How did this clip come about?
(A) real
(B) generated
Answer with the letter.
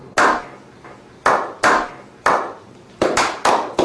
A